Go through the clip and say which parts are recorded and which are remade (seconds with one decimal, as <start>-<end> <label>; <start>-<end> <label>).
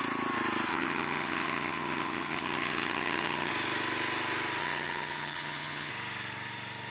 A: 0.0-0.7 recorded; 0.7-3.5 remade; 3.5-4.6 recorded; 4.6-5.9 remade; 5.9-6.9 recorded